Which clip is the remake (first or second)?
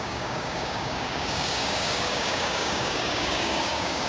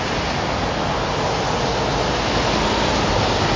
first